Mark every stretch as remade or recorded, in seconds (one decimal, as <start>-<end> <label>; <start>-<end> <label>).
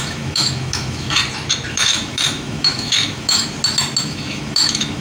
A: 0.0-1.2 remade; 1.2-1.7 recorded; 1.7-3.5 remade; 3.5-4.0 recorded; 4.0-5.0 remade